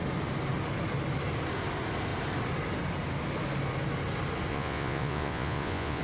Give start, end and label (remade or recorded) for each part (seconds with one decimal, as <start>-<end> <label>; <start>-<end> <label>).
0.0-4.5 recorded; 4.5-6.0 remade